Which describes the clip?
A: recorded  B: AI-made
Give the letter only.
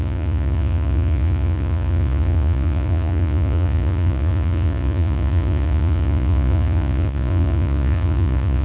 B